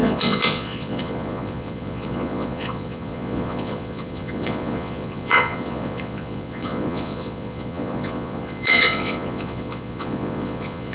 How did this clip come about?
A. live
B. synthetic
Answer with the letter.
B